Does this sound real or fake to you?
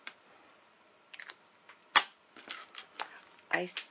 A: real